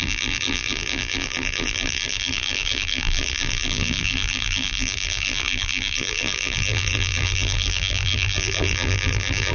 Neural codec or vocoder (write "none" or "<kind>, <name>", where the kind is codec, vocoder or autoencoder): vocoder, BigVGAN v2